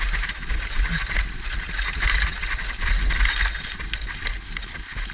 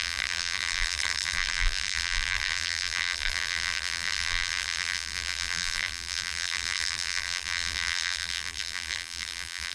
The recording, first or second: first